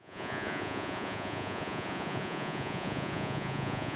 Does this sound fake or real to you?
fake